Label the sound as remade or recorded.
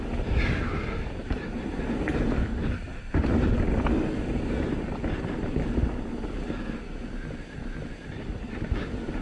recorded